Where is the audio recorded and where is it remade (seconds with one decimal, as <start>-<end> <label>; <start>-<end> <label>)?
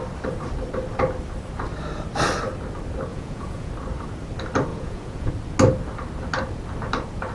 0.0-3.1 recorded; 3.1-3.7 remade; 3.7-4.7 recorded; 4.7-5.3 remade; 5.3-7.3 recorded